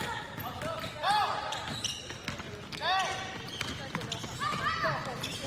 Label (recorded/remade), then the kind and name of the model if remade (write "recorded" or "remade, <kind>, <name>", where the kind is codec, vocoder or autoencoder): recorded